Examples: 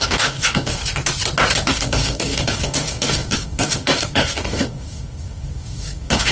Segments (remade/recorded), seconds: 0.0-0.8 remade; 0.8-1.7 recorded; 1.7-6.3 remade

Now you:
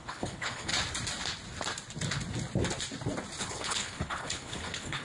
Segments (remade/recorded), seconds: 0.0-0.7 remade; 0.7-3.4 recorded; 3.4-5.0 remade

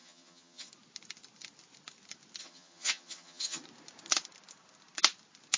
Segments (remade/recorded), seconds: 0.0-0.7 remade; 0.7-2.4 recorded; 2.4-3.6 remade; 3.6-5.6 recorded

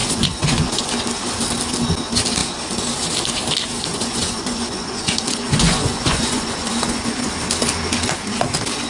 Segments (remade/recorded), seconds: 0.0-0.9 remade; 0.9-3.9 recorded; 3.9-7.3 remade; 7.3-8.9 recorded

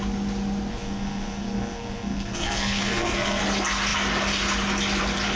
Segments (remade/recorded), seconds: 0.0-0.7 recorded; 0.7-3.4 remade; 3.4-5.4 recorded

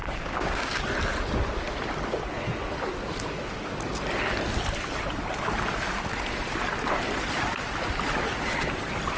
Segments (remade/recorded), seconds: 0.0-0.8 remade; 0.8-9.2 recorded